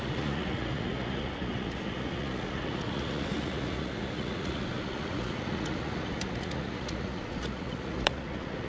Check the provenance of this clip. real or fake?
fake